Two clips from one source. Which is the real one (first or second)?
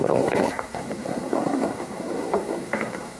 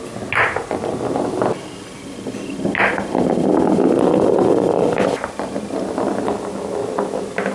second